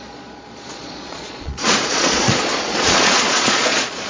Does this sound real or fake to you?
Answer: fake